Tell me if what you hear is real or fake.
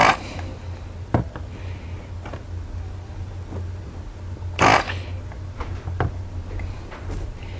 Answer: real